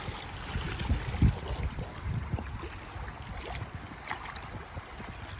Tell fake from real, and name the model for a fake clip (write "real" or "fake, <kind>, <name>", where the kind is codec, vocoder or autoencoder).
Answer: real